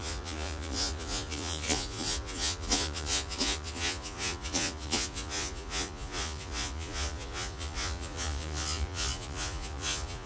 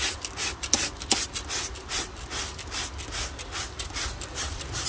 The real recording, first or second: second